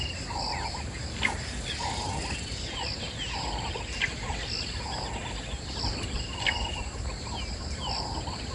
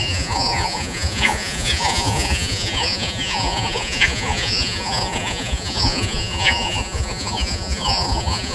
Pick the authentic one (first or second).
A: first